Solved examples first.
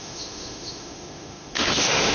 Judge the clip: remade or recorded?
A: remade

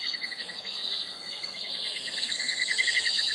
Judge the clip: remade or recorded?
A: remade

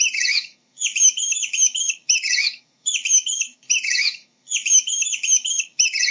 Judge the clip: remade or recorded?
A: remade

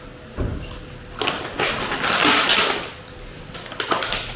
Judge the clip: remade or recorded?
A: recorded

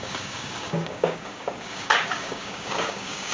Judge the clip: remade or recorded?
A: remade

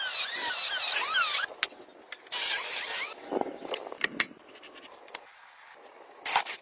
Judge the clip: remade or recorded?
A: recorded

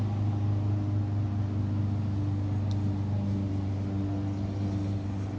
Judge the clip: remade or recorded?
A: recorded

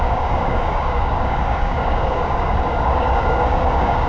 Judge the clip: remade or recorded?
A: remade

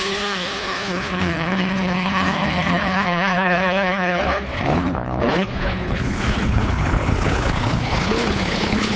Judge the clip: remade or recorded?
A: remade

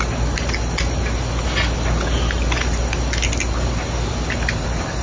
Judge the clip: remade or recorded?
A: recorded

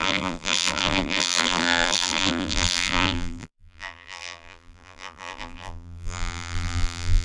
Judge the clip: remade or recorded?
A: remade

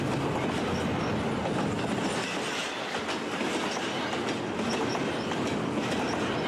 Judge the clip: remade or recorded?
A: recorded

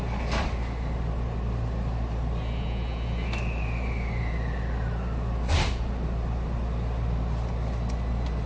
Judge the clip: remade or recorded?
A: recorded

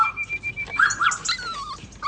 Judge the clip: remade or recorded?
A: recorded